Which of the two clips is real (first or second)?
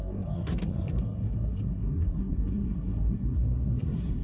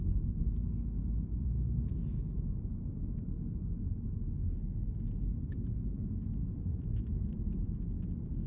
second